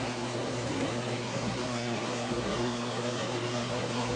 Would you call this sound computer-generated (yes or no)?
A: yes